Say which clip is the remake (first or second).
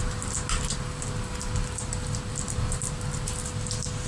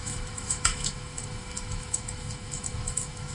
second